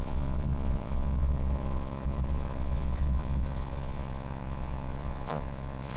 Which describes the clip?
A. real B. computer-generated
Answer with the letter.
B